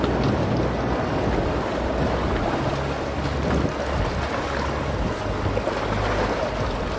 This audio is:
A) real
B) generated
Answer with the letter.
A